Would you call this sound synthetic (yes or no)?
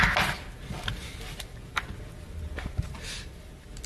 no